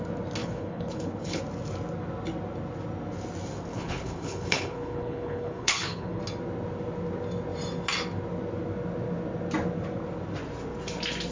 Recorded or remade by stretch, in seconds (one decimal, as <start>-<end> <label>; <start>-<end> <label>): 0.0-0.4 recorded; 0.4-1.4 remade; 1.4-3.7 recorded; 3.7-6.2 remade; 6.2-11.3 recorded